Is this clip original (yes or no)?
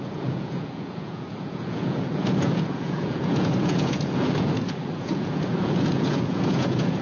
no